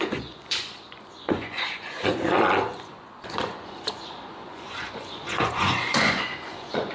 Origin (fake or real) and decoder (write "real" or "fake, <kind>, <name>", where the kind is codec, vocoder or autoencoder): fake, vocoder, Vocos